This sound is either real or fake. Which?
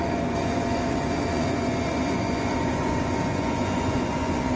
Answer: fake